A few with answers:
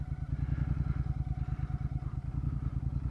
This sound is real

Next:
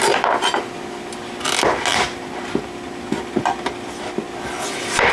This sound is real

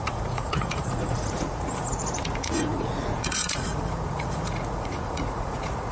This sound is fake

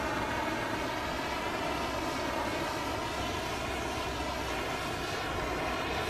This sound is real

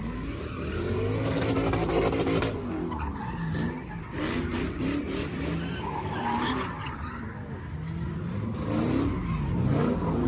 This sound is real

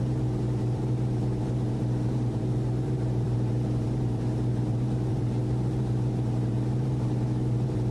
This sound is fake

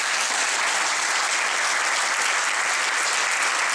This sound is real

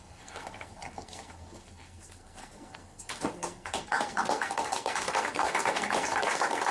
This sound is fake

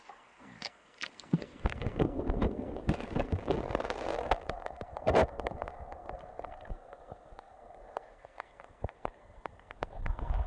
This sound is fake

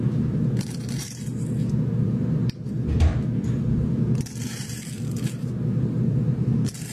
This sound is fake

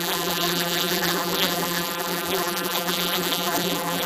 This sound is fake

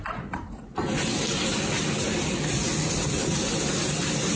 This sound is real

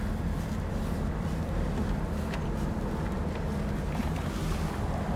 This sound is real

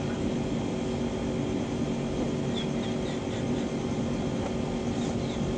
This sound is real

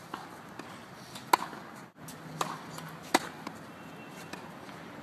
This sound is real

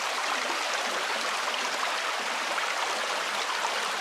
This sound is real